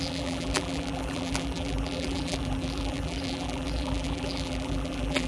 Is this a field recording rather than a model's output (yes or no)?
no